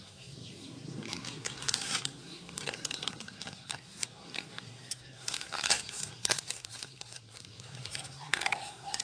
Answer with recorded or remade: remade